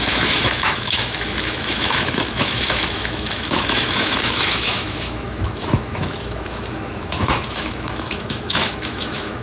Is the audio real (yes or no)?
no